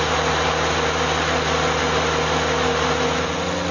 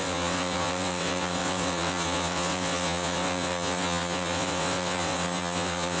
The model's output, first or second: second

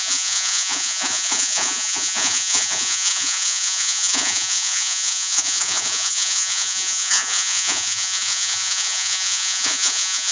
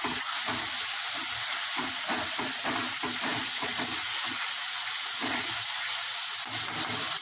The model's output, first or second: first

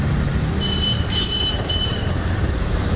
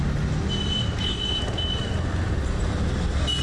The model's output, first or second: first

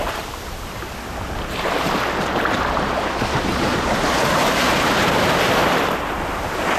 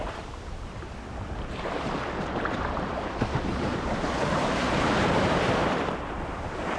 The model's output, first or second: second